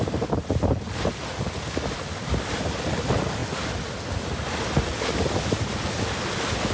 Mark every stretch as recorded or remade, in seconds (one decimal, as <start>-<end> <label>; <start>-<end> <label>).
0.0-6.7 recorded